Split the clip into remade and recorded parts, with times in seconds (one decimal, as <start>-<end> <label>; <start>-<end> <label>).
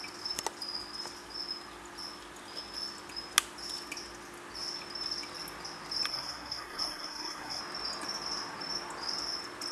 0.0-6.1 recorded; 6.1-7.6 remade; 7.6-9.7 recorded